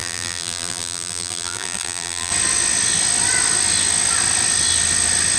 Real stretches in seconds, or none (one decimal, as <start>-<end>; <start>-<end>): 2.3-5.4